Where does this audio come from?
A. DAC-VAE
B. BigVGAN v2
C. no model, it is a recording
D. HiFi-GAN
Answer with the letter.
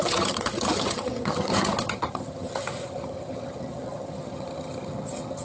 D